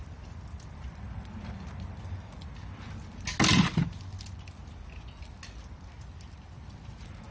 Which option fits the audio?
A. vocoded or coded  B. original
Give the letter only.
B